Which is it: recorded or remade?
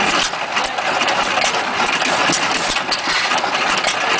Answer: recorded